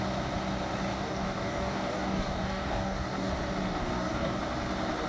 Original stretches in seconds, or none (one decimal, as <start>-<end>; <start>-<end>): 0.0-0.9; 3.3-3.8; 4.4-5.1